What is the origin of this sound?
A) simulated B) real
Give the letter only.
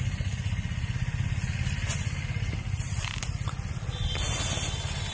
A